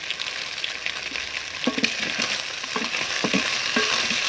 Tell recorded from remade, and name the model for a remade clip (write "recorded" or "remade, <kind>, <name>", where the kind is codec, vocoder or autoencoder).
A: recorded